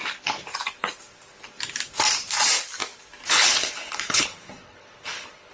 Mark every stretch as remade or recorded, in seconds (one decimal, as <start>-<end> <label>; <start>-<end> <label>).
0.0-3.3 recorded; 3.3-5.5 remade